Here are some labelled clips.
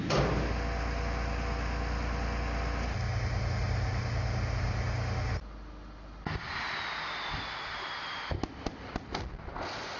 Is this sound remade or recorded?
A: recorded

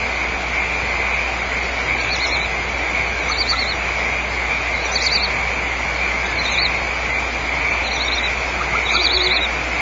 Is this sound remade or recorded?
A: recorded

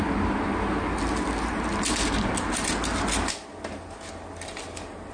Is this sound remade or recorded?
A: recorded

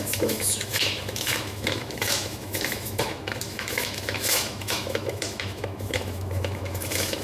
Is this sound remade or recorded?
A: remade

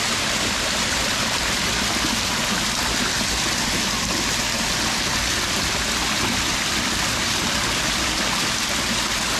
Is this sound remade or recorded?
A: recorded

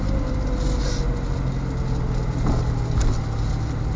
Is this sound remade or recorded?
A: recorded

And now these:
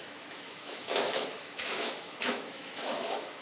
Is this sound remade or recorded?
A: remade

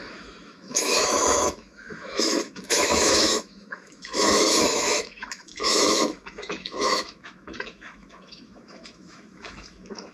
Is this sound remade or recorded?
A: remade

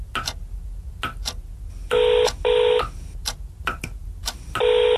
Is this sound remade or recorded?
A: recorded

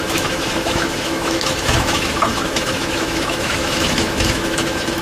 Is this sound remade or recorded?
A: remade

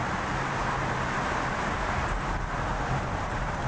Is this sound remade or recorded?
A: recorded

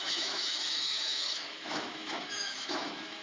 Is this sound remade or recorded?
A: remade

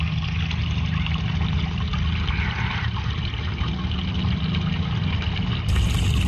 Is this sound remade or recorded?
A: recorded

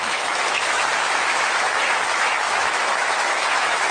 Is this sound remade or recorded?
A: remade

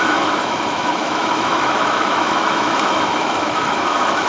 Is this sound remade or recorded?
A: remade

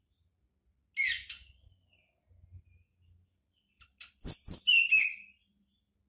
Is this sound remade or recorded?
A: recorded